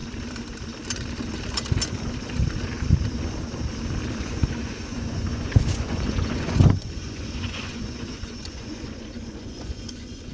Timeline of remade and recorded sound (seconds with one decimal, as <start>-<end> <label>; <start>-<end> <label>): 0.0-4.2 recorded; 4.2-10.3 remade